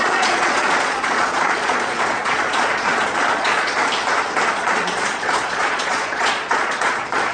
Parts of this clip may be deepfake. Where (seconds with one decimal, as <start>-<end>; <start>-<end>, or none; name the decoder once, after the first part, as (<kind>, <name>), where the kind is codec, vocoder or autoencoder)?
0.0-3.8 (vocoder, Vocos); 4.5-7.3